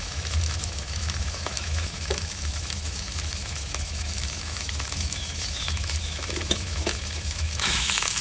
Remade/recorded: remade